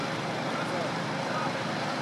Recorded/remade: remade